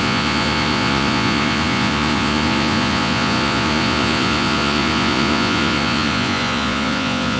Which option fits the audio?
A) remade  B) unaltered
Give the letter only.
A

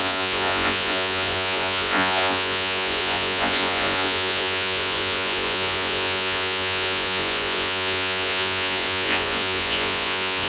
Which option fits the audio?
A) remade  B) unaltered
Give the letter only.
A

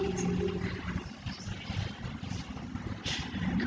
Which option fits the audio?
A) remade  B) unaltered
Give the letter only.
B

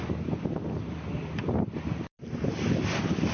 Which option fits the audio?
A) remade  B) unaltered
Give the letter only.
B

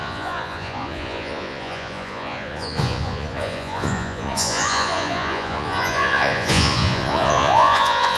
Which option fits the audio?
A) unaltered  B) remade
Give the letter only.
B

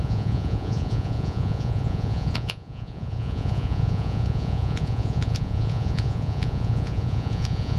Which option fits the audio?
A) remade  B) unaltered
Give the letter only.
A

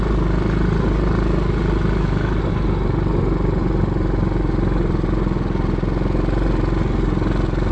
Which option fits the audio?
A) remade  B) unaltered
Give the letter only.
B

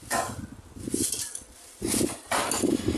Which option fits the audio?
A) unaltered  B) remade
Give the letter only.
A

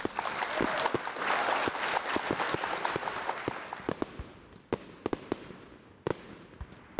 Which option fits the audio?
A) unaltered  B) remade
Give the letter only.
A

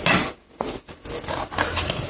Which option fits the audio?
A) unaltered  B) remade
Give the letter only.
A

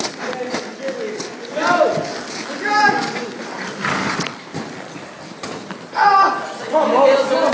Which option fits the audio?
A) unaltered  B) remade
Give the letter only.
A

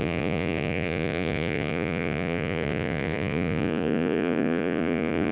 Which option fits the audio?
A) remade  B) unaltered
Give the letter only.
A